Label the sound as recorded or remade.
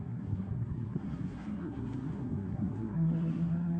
remade